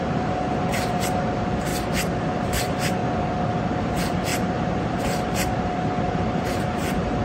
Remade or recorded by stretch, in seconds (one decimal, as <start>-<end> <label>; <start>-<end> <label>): 0.0-1.7 remade; 1.7-2.2 recorded; 2.2-3.0 remade; 3.0-3.8 recorded; 3.8-7.2 remade